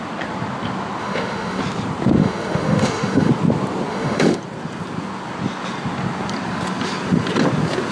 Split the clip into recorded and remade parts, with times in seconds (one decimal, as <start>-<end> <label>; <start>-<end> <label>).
0.0-1.0 recorded; 1.0-1.6 remade; 1.6-2.2 recorded; 2.2-3.3 remade; 3.3-3.9 recorded; 3.9-4.4 remade; 4.4-7.9 recorded